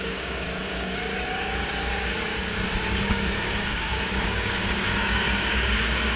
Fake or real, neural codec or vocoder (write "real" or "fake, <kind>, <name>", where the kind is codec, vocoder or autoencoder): fake, codec, DAC